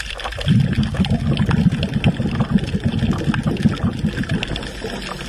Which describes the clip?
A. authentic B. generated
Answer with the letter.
A